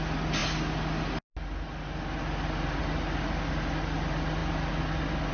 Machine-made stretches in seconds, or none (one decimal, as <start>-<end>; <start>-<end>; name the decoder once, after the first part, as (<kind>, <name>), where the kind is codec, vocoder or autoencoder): none